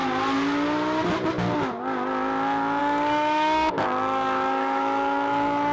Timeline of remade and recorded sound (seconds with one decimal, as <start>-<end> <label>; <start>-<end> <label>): 0.0-2.8 recorded; 2.8-5.7 remade